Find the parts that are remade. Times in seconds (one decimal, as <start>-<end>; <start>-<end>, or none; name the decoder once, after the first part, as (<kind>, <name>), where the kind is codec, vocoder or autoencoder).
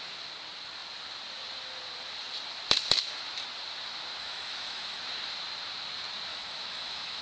4.2-5.0 (autoencoder, DAC-VAE); 6.3-7.2